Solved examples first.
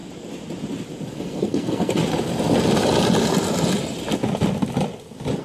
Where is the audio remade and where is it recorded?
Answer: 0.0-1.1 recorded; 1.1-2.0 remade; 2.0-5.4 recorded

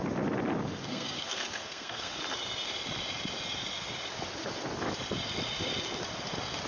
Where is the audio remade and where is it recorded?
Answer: 0.0-0.8 recorded; 0.8-2.2 remade; 2.2-6.7 recorded

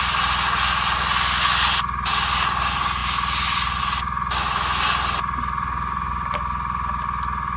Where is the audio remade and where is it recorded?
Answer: 0.0-7.6 recorded

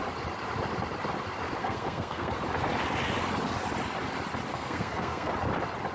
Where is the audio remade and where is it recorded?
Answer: 0.0-1.6 recorded; 1.6-2.3 remade; 2.3-4.5 recorded; 4.5-5.3 remade; 5.3-5.9 recorded

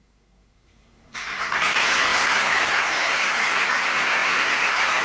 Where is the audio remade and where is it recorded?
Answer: 0.0-5.0 remade

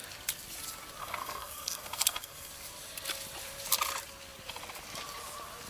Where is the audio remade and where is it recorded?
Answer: 0.0-1.0 recorded; 1.0-2.5 remade; 2.5-5.7 recorded